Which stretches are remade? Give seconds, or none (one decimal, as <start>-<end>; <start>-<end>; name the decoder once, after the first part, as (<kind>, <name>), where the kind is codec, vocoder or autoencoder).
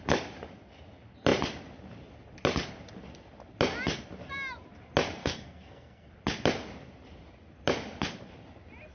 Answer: 5.2-6.1 (codec, SNAC)